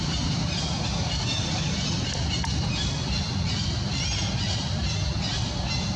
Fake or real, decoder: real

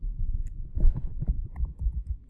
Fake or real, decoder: real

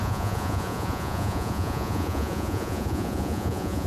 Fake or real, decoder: fake, vocoder, Vocos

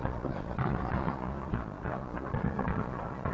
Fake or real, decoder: fake, vocoder, Vocos